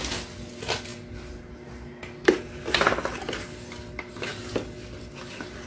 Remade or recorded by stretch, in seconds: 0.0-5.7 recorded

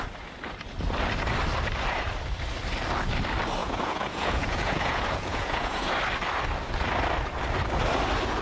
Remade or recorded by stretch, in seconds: 0.0-3.6 recorded; 3.6-5.9 remade; 5.9-8.4 recorded

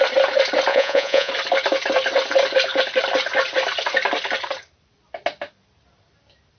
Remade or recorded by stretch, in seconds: 0.0-0.7 recorded; 0.7-1.3 remade; 1.3-6.6 recorded